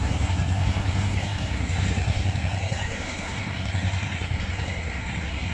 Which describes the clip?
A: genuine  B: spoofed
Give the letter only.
B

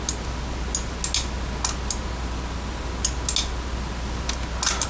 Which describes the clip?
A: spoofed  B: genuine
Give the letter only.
B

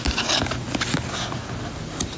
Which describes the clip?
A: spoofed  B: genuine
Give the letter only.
B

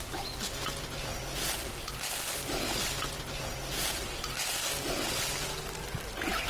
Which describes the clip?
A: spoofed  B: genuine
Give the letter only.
B